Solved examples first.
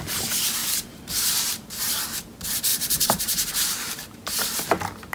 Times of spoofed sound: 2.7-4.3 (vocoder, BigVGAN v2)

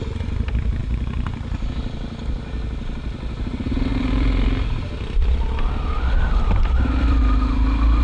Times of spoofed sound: 3.9-7.2 (vocoder, BigVGAN v2)

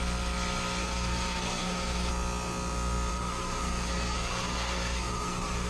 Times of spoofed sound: 0.8-2.1 (codec, SNAC); 3.1-5.7

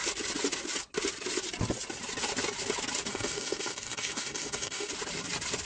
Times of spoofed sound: 3.1-4.9 (codec, DAC)

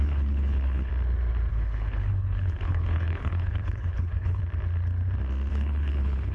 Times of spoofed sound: 0.0-0.9 (codec, HILCodec); 1.5-4.4; 5.5-6.3

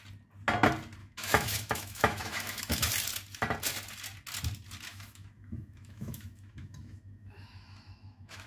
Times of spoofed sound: 1.0-2.9 (autoencoder, DAC-VAE); 4.9-8.5